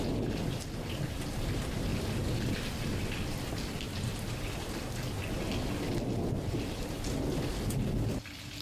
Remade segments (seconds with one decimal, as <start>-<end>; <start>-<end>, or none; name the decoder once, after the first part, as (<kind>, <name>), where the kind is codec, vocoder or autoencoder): 0.4-1.5 (vocoder, BigVGAN v2); 1.9-3.5